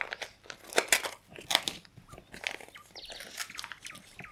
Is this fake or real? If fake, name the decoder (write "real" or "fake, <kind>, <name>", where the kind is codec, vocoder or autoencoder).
real